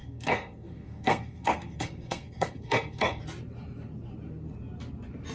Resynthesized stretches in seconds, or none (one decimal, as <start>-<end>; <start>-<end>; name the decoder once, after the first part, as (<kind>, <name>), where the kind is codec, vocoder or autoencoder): 0.0-3.2 (codec, SNAC)